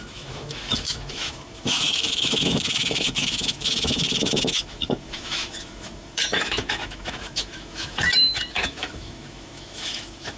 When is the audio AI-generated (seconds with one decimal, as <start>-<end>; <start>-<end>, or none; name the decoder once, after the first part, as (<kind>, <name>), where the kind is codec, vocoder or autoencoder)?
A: 0.0-10.4 (autoencoder, DAC-VAE)